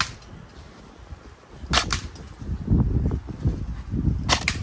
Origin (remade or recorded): recorded